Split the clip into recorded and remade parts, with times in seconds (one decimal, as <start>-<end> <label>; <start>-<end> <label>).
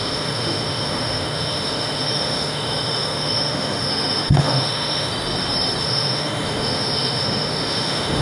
0.0-5.1 remade; 5.1-5.8 recorded; 5.8-8.2 remade